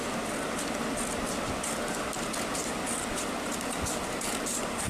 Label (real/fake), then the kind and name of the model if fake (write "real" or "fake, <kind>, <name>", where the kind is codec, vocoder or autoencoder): real